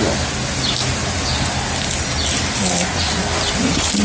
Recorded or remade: recorded